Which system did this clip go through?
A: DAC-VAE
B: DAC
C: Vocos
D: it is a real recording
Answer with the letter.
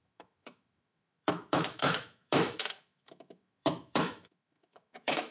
A